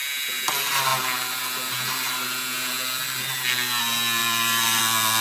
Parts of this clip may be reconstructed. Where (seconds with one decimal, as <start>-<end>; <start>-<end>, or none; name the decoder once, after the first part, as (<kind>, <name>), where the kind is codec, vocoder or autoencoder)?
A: 4.2-4.8 (vocoder, BigVGAN v2)

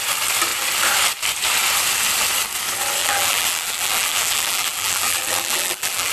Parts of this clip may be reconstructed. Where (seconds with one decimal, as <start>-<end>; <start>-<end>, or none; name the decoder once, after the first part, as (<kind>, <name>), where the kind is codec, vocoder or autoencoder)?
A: 3.0-6.1 (vocoder, BigVGAN v2)

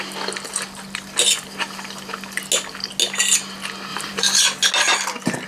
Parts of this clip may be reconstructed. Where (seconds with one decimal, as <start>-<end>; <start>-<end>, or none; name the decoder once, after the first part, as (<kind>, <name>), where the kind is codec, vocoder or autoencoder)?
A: 3.9-4.4 (vocoder, BigVGAN v2)

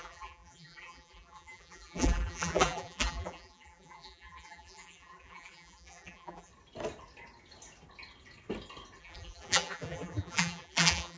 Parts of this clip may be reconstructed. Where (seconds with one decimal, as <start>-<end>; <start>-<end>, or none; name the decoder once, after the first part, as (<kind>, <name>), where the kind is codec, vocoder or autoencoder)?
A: 0.0-6.5 (vocoder, BigVGAN v2); 9.0-11.2